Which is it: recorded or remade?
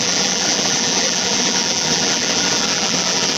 remade